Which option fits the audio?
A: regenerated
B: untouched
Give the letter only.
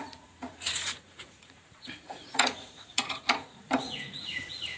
A